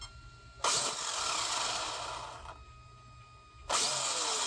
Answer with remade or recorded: recorded